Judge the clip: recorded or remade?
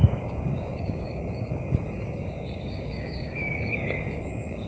remade